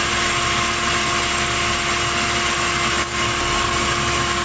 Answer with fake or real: real